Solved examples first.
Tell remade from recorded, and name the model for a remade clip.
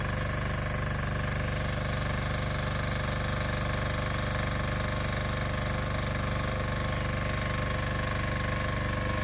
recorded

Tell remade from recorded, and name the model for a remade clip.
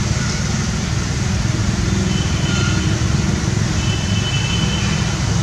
recorded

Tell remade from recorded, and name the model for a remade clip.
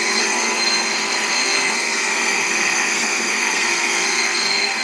remade, codec, SNAC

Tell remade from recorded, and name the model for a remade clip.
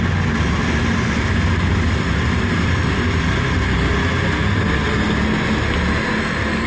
recorded